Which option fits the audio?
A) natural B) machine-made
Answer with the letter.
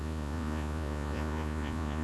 B